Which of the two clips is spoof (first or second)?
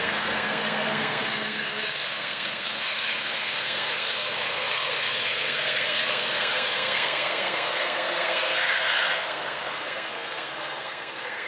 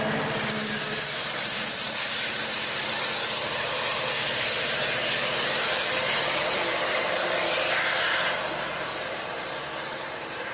first